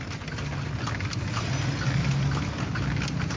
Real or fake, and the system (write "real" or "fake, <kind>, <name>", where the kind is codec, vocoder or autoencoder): real